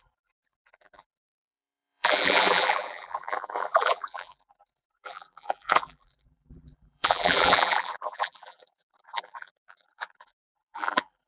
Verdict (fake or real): fake